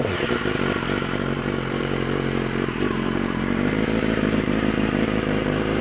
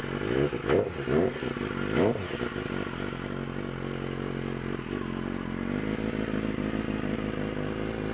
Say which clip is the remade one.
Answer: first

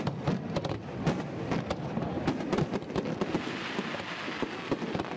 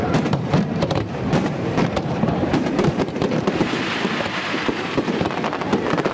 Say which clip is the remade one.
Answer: second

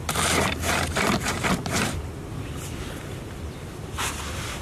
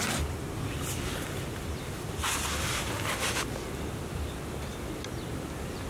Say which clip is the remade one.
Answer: first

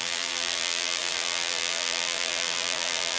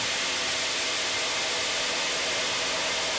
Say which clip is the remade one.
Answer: first